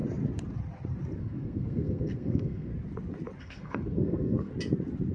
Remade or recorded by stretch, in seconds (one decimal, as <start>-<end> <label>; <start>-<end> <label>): 0.0-1.2 recorded; 1.2-2.7 remade; 2.7-3.4 recorded; 3.4-4.5 remade; 4.5-5.1 recorded